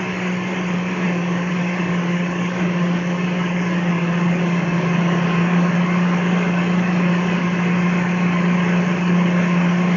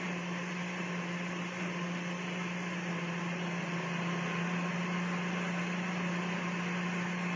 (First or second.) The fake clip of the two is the first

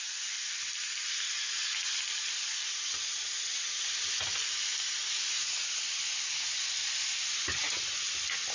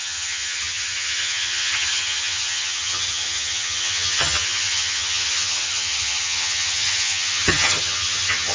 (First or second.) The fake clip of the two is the second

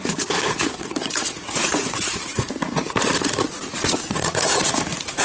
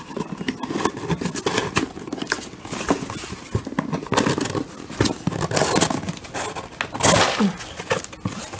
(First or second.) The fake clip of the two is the first